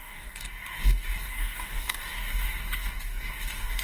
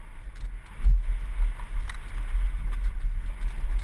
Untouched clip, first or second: second